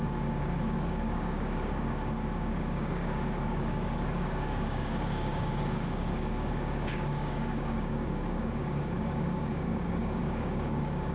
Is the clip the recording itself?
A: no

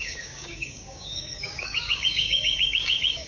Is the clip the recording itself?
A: no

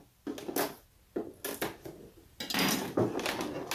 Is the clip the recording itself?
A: yes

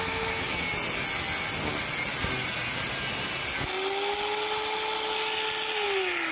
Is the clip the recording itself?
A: yes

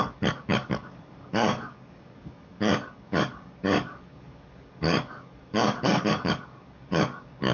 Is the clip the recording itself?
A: no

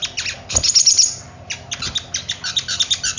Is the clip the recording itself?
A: yes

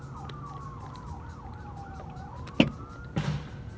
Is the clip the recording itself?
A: yes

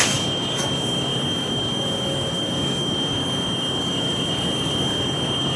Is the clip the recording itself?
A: no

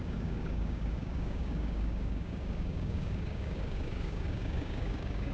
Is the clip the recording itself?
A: no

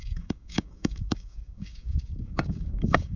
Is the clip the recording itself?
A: no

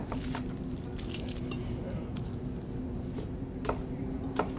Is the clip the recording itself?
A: yes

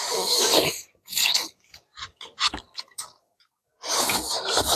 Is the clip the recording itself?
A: no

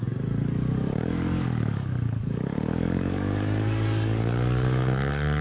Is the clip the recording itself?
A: no